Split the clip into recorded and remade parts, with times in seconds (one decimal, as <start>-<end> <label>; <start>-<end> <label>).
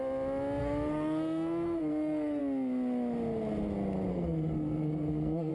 0.0-0.6 recorded; 0.6-2.4 remade; 2.4-4.1 recorded; 4.1-5.5 remade